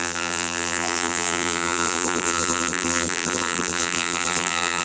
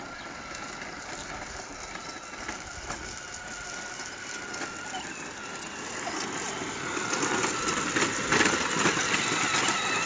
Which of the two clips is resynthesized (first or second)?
first